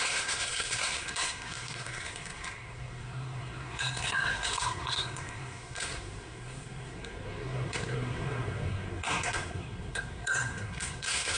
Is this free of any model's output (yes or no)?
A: no